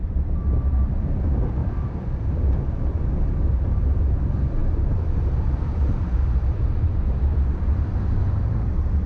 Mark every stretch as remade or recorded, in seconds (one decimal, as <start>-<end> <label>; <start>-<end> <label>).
0.0-9.1 remade